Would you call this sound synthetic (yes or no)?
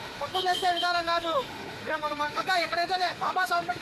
yes